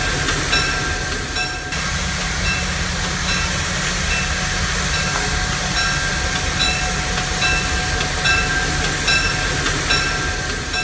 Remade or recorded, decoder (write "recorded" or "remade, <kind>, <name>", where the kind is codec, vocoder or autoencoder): recorded